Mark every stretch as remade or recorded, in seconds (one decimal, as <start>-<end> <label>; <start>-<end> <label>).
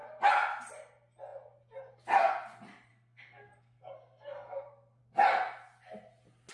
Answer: 0.0-2.9 recorded; 2.9-5.0 remade; 5.0-6.5 recorded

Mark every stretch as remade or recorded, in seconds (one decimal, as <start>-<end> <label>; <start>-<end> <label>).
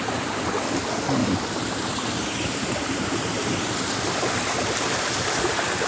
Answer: 0.0-1.2 recorded; 1.2-3.5 remade; 3.5-5.9 recorded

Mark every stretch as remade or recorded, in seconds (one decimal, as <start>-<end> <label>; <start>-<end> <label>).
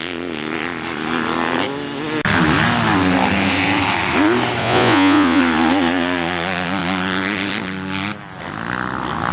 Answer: 0.0-4.6 recorded; 4.6-5.4 remade; 5.4-9.3 recorded